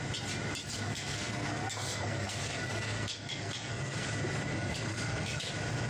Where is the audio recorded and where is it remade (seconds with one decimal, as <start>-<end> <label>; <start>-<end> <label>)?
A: 0.0-0.6 recorded; 0.6-4.1 remade; 4.1-4.5 recorded; 4.5-5.5 remade; 5.5-5.9 recorded